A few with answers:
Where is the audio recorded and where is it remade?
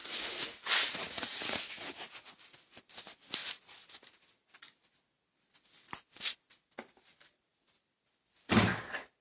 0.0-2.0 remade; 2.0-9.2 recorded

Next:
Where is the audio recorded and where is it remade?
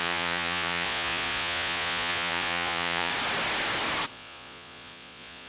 0.0-3.1 remade; 3.1-4.1 recorded; 4.1-5.5 remade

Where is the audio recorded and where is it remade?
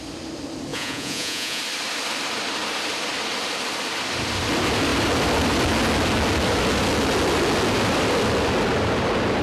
0.0-0.7 recorded; 0.7-1.6 remade; 1.6-9.4 recorded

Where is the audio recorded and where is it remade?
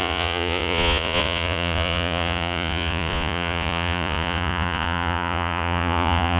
0.0-6.4 remade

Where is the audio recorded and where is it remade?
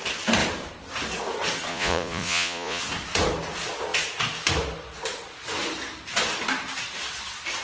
0.0-1.7 recorded; 1.7-2.8 remade; 2.8-7.6 recorded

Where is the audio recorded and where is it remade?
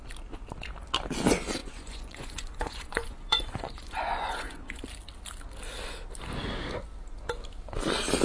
0.0-1.6 recorded; 1.6-4.8 remade; 4.8-8.2 recorded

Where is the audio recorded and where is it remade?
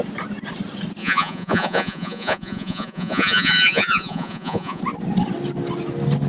0.0-1.0 recorded; 1.0-4.8 remade; 4.8-6.3 recorded